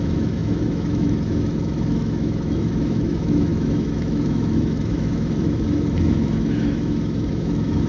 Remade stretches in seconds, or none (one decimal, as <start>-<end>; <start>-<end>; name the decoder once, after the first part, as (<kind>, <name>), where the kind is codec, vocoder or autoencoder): 0.0-7.9 (autoencoder, DAC-VAE)